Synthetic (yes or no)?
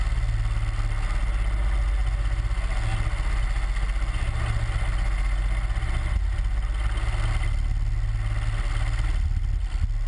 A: no